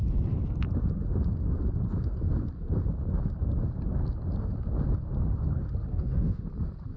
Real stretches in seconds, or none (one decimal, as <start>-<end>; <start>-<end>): 0.0-5.9; 6.5-7.0